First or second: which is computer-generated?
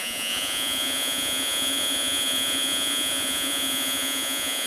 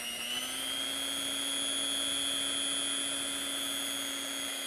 first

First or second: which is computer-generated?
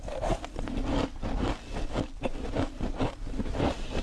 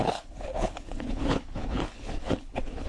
second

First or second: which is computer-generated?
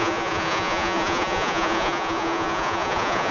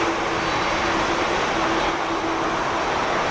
first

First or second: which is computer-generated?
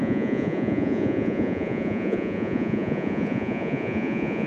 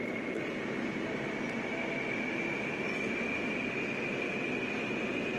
first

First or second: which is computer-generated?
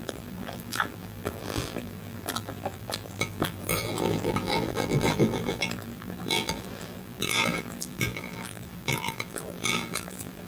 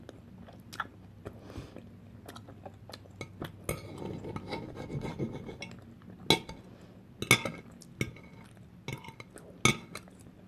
first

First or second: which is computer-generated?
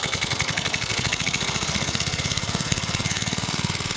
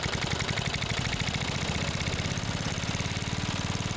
first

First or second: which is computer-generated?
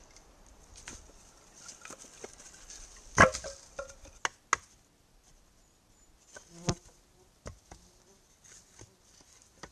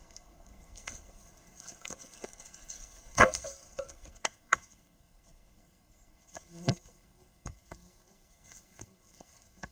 second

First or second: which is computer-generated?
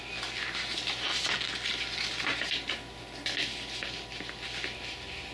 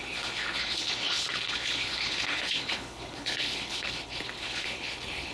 second